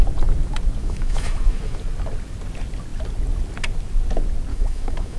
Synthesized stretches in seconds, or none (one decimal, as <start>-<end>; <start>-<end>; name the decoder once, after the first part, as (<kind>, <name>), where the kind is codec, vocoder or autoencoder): 0.8-1.8 (autoencoder, DAC-VAE); 4.5-5.2